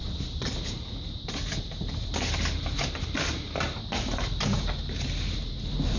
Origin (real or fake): real